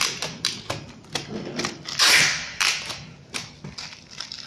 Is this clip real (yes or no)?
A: yes